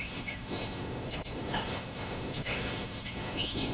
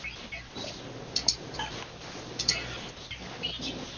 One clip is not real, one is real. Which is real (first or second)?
second